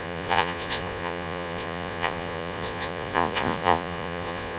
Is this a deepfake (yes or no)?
yes